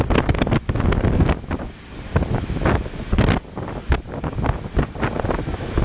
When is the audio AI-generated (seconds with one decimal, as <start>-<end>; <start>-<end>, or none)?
none